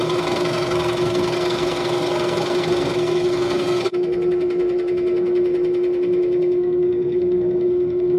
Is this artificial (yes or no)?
yes